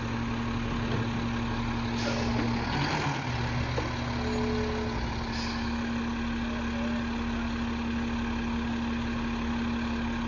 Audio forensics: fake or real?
real